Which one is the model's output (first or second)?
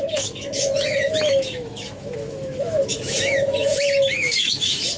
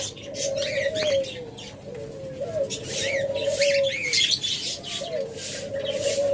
first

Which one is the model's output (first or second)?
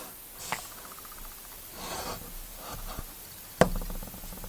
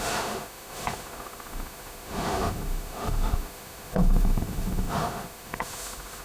second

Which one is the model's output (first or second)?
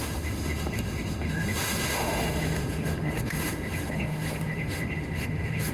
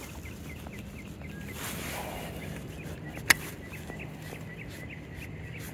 first